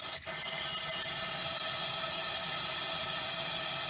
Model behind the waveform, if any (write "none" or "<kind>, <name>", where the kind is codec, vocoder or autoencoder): none